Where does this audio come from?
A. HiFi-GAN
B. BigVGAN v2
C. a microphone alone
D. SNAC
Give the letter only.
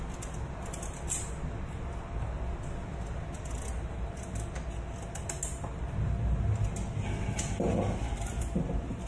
C